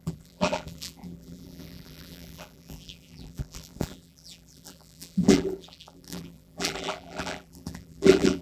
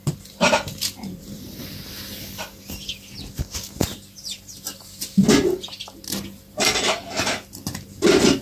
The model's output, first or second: first